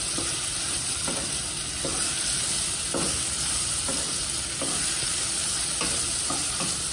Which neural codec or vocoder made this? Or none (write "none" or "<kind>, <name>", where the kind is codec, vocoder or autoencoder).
vocoder, BigVGAN v2